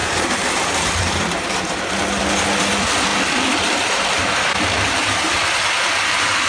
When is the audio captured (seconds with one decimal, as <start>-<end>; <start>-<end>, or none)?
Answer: 1.8-6.5